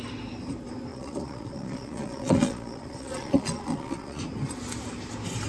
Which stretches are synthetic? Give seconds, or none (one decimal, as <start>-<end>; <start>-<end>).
0.9-4.2